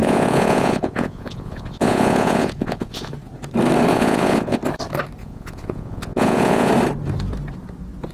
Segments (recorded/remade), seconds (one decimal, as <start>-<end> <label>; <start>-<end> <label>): 0.0-3.1 remade; 3.1-3.9 recorded; 3.9-4.6 remade; 4.6-5.2 recorded; 5.2-6.7 remade; 6.7-8.1 recorded